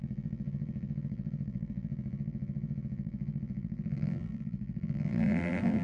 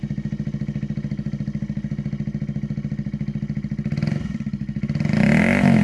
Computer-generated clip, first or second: first